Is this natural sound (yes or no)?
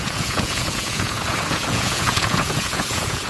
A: no